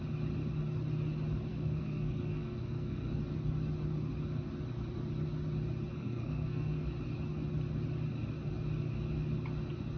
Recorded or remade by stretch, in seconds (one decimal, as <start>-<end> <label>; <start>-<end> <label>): 0.0-1.5 recorded; 1.5-3.2 remade; 3.2-5.9 recorded; 5.9-6.9 remade; 6.9-10.0 recorded